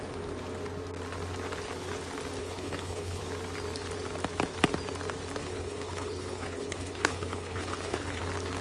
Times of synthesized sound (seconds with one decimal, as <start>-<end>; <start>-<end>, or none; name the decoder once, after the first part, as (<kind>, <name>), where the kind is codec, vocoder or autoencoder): 2.4-3.2 (codec, HILCodec); 5.4-8.2